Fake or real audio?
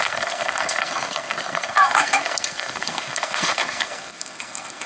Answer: fake